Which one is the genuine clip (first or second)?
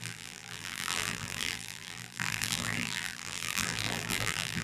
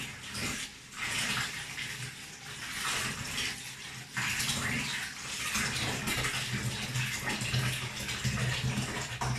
second